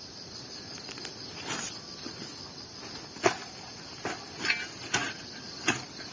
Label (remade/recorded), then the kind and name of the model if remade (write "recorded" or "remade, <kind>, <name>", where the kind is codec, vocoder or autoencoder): recorded